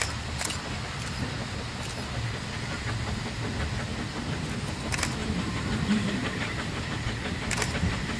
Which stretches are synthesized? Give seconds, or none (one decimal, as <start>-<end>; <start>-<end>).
5.2-6.8